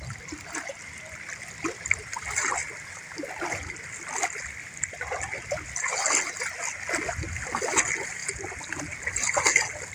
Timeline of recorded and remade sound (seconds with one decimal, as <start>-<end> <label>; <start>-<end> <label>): 0.0-9.9 recorded